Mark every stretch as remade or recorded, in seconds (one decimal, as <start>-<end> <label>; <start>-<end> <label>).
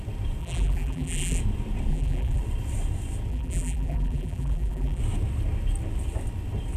0.0-0.4 recorded; 0.4-1.4 remade; 1.4-1.9 recorded; 1.9-2.4 remade; 2.4-3.3 recorded; 3.3-5.0 remade; 5.0-6.8 recorded